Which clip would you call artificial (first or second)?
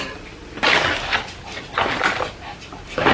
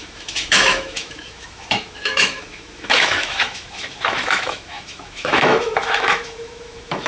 second